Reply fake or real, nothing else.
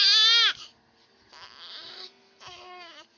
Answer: real